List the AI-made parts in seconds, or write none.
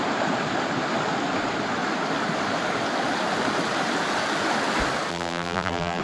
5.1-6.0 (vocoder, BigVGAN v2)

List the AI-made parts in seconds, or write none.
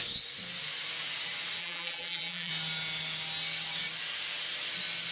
1.6-2.5 (vocoder, BigVGAN v2)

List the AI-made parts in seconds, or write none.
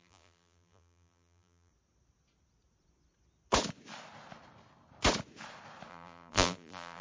0.0-1.7 (vocoder, BigVGAN v2); 5.9-7.0